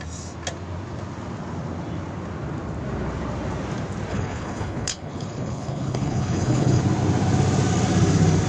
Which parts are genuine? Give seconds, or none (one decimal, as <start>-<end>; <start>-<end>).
0.0-4.1; 6.8-8.5